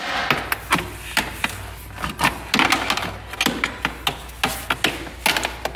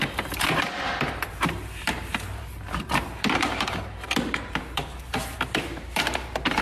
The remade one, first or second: second